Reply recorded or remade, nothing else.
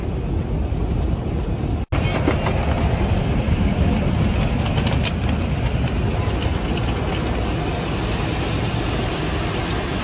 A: recorded